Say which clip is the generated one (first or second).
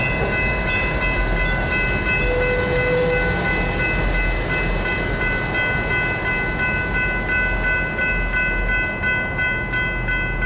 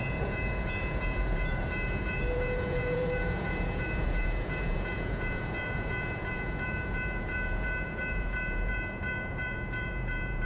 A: second